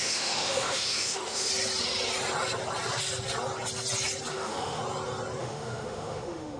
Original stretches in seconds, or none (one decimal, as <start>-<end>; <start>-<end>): 1.5-4.3; 4.8-5.4